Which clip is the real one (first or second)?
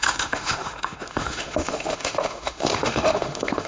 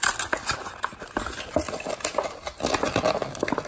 second